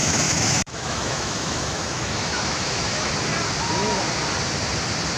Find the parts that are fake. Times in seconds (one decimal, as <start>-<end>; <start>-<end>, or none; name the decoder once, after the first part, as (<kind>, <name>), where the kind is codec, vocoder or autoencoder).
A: 0.0-3.1 (autoencoder, DAC-VAE)